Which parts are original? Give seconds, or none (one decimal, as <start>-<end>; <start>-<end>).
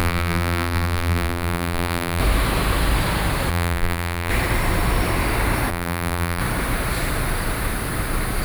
2.2-3.5; 4.3-5.7; 6.4-8.4